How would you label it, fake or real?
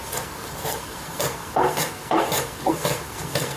fake